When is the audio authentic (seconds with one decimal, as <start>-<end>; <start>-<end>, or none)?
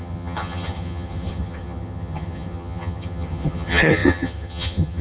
none